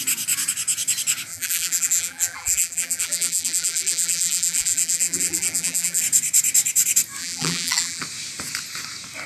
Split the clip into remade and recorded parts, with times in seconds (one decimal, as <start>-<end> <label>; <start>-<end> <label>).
0.0-1.3 recorded; 1.3-6.0 remade; 6.0-7.2 recorded; 7.2-8.0 remade; 8.0-9.3 recorded